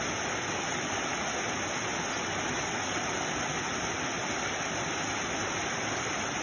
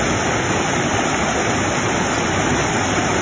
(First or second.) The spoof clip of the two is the second